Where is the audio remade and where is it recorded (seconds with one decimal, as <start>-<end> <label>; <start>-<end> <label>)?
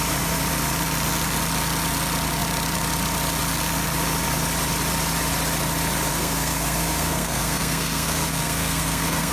0.0-6.1 recorded; 6.1-9.3 remade